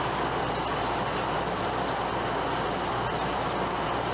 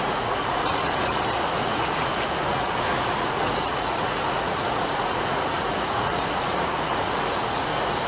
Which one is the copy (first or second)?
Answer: second